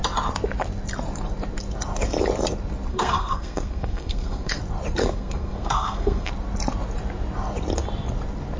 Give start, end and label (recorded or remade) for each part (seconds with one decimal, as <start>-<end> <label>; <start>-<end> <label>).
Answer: 0.0-2.9 recorded; 2.9-4.6 remade; 4.6-5.0 recorded; 5.0-6.3 remade; 6.3-8.6 recorded